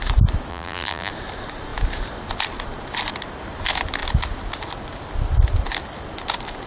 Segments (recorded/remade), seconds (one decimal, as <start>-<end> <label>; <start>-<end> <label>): 0.0-0.5 recorded; 0.5-1.1 remade; 1.1-6.7 recorded